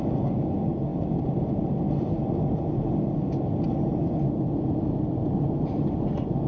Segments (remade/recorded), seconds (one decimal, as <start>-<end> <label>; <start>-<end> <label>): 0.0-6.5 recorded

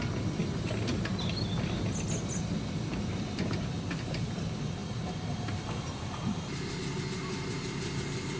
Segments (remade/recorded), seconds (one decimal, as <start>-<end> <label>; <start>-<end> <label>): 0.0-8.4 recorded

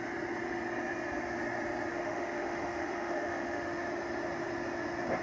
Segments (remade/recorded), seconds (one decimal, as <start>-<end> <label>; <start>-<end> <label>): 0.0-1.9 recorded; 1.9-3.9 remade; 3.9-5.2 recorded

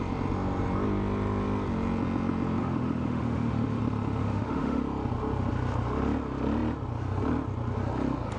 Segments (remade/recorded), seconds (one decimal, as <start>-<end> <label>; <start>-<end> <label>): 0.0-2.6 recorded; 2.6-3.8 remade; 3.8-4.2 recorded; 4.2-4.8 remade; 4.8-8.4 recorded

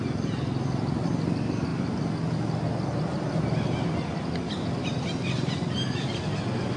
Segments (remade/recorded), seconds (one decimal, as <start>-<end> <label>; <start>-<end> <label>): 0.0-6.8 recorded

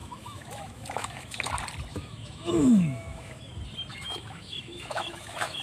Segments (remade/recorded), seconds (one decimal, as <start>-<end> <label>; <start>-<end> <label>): 0.0-1.5 remade; 1.5-1.9 recorded; 1.9-3.5 remade; 3.5-3.9 recorded; 3.9-5.6 remade

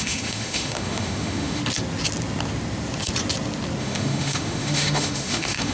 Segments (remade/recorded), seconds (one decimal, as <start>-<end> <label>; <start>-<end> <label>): 0.0-1.6 remade; 1.6-3.8 recorded; 3.8-5.7 remade